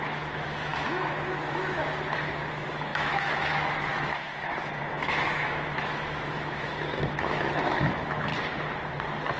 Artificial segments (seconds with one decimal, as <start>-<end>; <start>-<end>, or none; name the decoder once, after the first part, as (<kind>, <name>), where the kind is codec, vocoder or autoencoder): 0.0-1.8 (autoencoder, DAC-VAE); 2.5-8.3